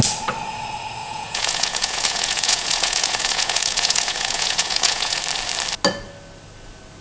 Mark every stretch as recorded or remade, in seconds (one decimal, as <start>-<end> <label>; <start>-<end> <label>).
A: 0.0-1.0 recorded; 1.0-5.2 remade; 5.2-7.0 recorded